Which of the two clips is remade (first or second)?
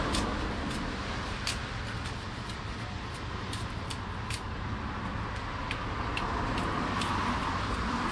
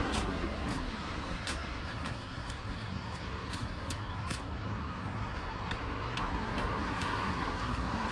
second